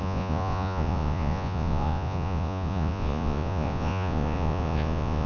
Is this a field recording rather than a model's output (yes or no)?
no